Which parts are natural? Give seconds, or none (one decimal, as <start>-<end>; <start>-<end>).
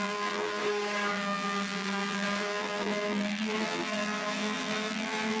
0.6-1.1